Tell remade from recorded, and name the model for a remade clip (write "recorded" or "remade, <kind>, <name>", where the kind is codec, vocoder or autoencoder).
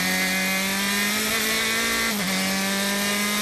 recorded